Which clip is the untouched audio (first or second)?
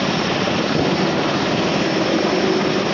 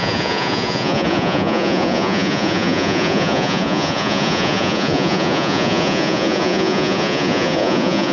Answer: first